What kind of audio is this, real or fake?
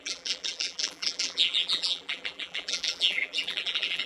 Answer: fake